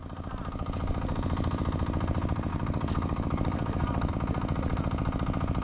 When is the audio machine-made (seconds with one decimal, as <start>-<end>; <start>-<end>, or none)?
2.5-4.1